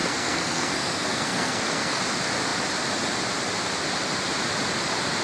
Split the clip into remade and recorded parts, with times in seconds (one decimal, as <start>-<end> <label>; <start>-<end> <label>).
0.0-2.0 remade; 2.0-5.2 recorded